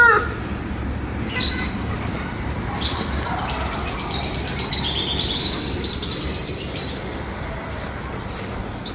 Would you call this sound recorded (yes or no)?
yes